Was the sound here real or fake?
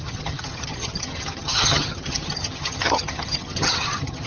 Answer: fake